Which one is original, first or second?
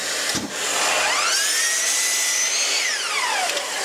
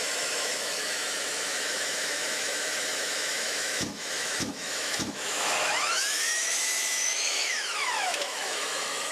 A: first